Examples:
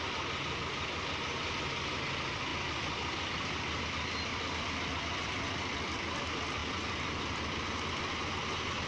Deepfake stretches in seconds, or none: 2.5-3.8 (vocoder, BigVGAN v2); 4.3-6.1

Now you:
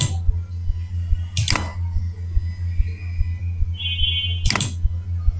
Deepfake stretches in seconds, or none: none

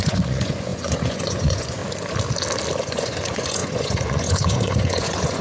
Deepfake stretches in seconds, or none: 0.0-1.8 (vocoder, Vocos); 2.8-5.4

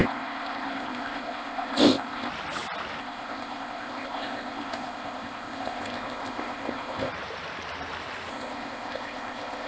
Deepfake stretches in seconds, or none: 0.0-2.3 (codec, ZipCodec); 3.0-7.1; 8.3-9.7

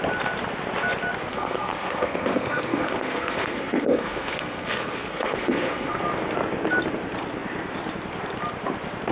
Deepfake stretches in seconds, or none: 1.3-6.0 (codec, SNAC)